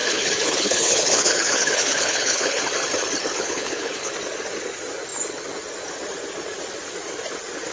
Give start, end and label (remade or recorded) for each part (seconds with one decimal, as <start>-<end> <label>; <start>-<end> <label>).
0.0-2.6 remade; 2.6-3.3 recorded; 3.3-4.1 remade; 4.1-7.7 recorded